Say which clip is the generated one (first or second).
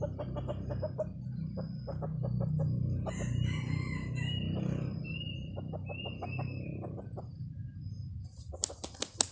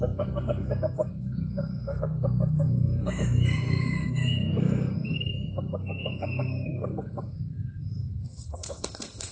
second